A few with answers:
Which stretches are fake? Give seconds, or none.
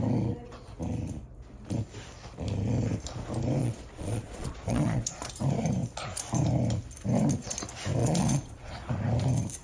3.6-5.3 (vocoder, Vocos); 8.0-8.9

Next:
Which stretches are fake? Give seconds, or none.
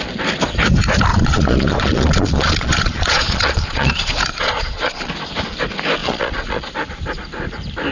1.1-5.1 (vocoder, Vocos); 6.0-6.7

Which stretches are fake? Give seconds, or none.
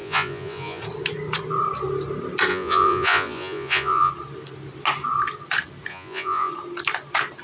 0.0-0.8 (vocoder, Vocos); 2.5-4.1; 5.9-6.5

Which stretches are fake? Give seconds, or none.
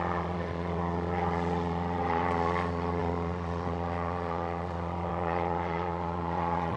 0.0-6.8 (vocoder, Vocos)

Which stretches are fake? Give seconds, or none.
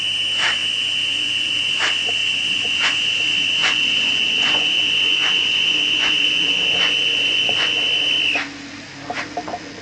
0.6-1.8 (vocoder, Vocos); 2.2-3.2; 3.6-7.8